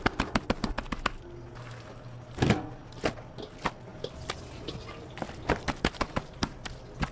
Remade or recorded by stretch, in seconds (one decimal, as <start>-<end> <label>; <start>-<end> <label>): 0.0-7.1 recorded